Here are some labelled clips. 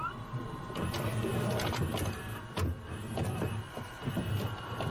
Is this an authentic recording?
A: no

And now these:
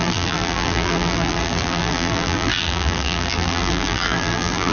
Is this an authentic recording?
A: no